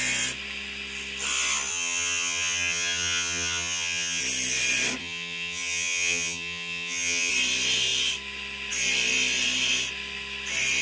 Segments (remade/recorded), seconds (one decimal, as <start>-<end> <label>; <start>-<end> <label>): 0.0-1.7 recorded; 1.7-4.2 remade; 4.2-5.0 recorded; 5.0-7.3 remade; 7.3-10.8 recorded